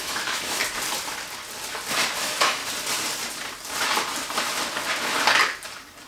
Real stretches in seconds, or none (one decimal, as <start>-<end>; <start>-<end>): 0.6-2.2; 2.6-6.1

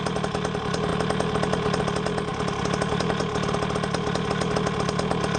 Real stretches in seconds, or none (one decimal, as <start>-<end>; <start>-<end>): 0.0-5.4

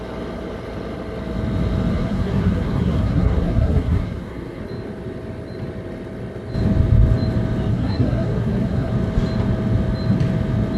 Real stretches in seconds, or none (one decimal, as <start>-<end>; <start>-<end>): 0.0-1.9; 4.6-7.7; 8.9-10.8

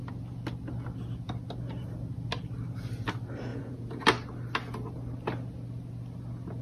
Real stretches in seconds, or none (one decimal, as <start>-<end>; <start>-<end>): 0.0-3.5; 4.0-6.6

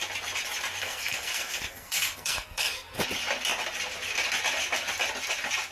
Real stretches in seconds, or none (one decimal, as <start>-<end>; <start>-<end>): 0.0-0.8; 3.0-5.7

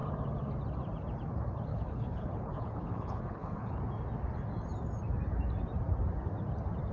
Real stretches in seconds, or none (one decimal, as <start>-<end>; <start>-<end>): 0.0-1.7; 3.8-6.9